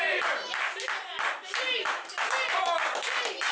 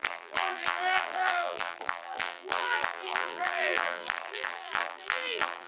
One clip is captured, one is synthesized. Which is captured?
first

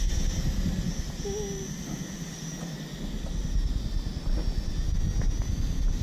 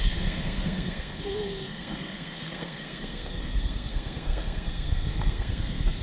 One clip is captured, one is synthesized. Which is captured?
first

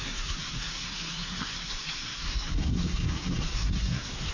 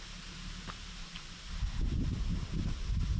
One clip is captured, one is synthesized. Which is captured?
second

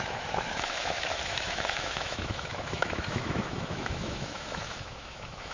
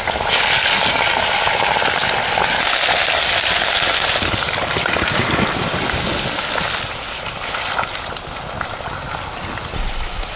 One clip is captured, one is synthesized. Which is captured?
second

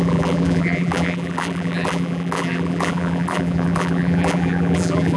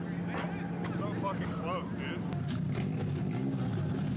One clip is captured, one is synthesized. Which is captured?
second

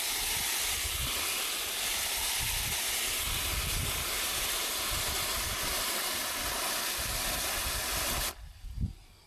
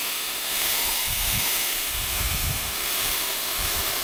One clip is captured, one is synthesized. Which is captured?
first